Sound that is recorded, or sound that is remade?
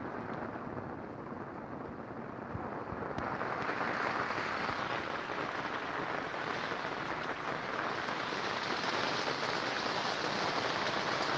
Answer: recorded